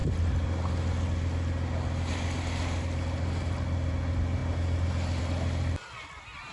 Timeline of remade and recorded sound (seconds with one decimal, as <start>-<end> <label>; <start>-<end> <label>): 0.0-6.5 recorded